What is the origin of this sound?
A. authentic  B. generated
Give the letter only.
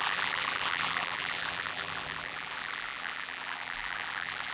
B